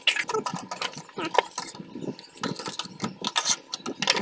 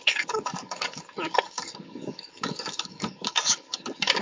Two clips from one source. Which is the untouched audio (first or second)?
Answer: first